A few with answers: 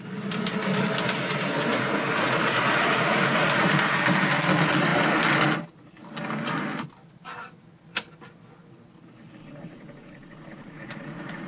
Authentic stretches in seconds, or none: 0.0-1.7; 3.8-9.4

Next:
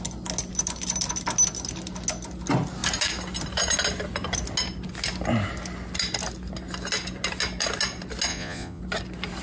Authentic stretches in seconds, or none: 0.0-8.3; 8.8-9.4

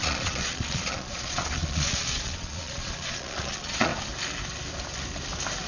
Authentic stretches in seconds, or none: 3.9-5.7

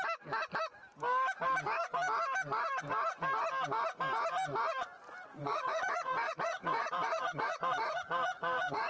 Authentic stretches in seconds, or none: 0.0-5.4

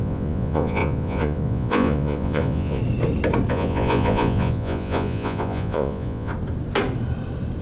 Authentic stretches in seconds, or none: 2.8-3.5; 6.3-7.6

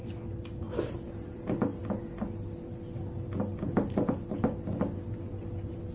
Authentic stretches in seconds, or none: 0.0-5.9

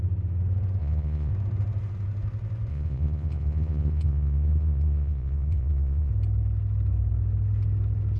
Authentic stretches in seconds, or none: 0.0-0.8; 1.3-2.7; 6.1-8.2

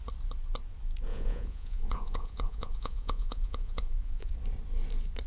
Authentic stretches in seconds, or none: 0.0-1.1; 4.3-5.3